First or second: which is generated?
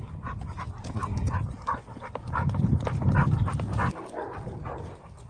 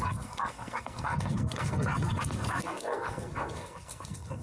second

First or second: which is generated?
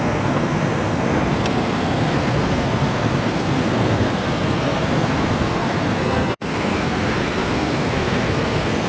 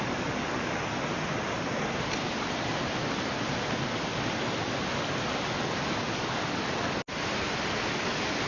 first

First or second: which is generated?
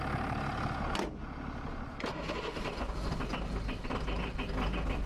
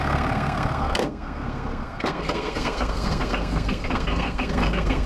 second